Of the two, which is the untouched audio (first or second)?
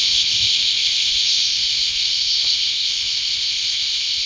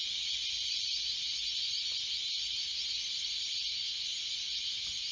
second